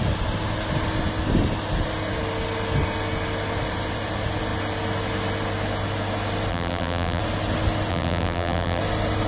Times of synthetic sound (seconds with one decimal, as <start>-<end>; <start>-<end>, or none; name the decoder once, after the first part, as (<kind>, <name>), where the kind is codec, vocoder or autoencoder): 6.5-7.2 (vocoder, BigVGAN v2); 7.9-8.8